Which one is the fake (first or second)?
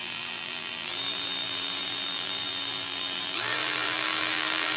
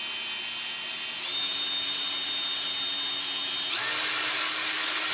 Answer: first